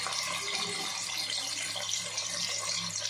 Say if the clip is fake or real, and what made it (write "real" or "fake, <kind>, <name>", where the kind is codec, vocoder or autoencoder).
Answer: real